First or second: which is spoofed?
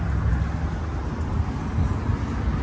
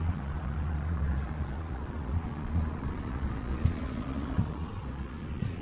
second